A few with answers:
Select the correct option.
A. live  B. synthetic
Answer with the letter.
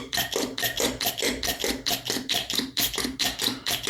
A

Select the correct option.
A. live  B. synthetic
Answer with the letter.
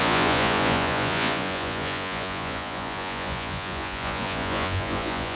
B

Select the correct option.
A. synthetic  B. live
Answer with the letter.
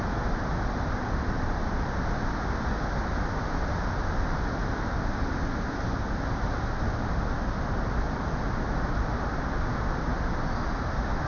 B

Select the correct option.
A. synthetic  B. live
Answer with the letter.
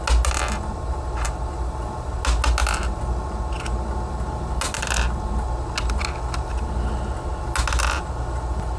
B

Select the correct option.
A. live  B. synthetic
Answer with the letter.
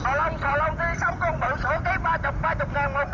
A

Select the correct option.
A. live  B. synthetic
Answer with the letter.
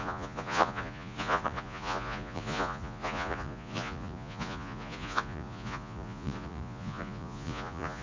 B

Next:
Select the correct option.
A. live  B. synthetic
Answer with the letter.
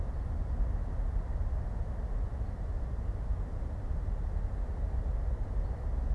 A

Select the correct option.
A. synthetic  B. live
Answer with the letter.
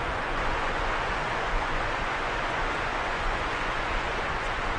A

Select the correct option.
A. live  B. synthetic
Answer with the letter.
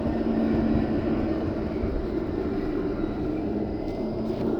A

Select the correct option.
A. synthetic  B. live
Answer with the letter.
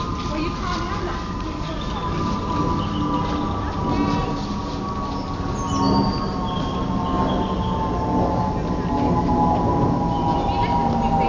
B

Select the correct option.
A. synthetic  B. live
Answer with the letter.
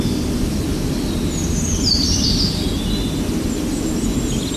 B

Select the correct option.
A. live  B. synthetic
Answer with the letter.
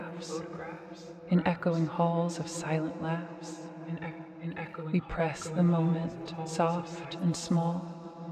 A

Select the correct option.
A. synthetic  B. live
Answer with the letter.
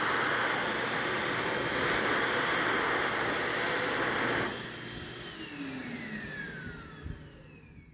B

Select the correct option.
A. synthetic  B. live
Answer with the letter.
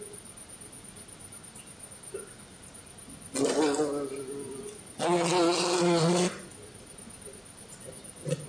B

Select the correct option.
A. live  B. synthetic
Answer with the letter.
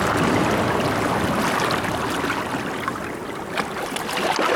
A